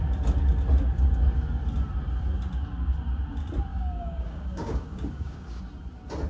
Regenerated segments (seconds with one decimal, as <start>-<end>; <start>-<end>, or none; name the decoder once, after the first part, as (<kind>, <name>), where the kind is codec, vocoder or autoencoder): 3.7-5.6 (codec, DAC)